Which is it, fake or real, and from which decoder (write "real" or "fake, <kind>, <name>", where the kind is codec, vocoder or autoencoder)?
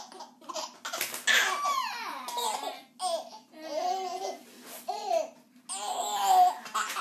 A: real